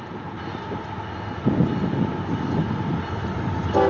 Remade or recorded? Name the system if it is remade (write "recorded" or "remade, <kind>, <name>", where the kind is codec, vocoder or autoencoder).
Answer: recorded